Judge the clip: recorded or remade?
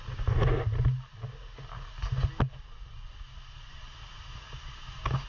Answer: recorded